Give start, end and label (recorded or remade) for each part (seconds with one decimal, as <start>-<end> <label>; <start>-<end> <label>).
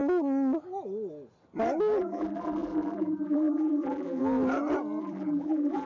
0.0-2.0 recorded; 2.0-4.2 remade; 4.2-5.0 recorded; 5.0-5.9 remade